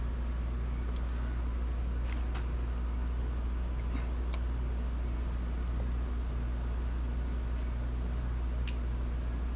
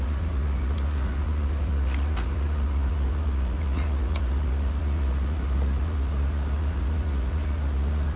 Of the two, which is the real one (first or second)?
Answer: first